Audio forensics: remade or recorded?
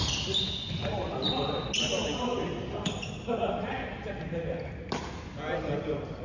recorded